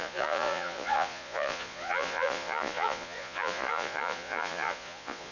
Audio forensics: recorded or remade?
remade